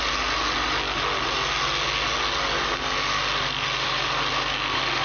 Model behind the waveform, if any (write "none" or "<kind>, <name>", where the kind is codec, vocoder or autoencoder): none